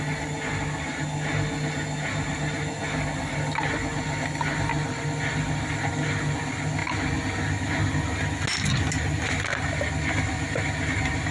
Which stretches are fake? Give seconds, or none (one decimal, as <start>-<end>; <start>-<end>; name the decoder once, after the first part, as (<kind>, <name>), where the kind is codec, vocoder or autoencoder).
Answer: none